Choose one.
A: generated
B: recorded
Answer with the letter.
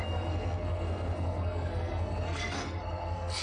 A